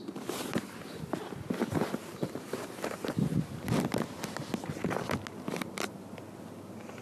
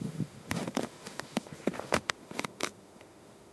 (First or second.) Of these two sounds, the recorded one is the first